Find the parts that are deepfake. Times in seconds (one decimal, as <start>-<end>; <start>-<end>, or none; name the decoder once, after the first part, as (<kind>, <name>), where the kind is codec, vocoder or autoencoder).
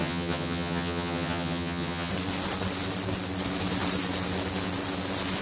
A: 0.0-2.1 (vocoder, HiFi-GAN)